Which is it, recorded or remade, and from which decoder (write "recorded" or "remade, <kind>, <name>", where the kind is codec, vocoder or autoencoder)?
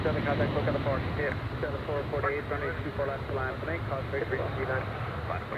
recorded